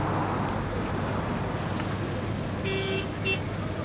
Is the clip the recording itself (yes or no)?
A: yes